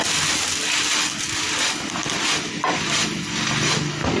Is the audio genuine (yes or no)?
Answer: yes